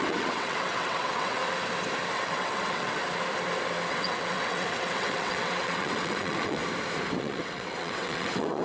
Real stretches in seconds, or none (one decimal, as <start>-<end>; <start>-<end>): 1.4-2.1; 3.0-3.9; 6.6-7.2